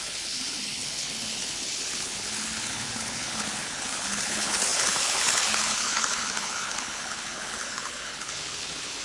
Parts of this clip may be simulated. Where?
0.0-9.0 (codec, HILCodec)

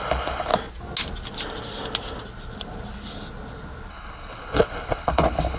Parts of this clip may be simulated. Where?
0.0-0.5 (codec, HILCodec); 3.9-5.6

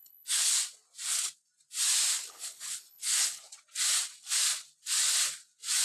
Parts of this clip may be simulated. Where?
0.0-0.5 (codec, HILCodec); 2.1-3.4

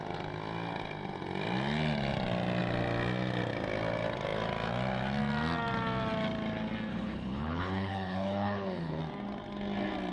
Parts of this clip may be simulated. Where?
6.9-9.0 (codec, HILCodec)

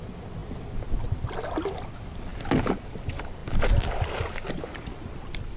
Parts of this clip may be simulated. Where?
none